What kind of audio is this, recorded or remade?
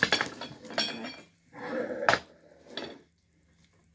recorded